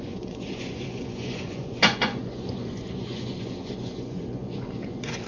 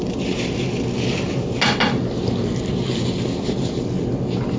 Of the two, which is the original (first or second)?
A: second